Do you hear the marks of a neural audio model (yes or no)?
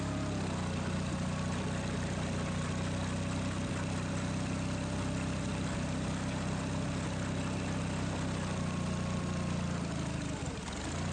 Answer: no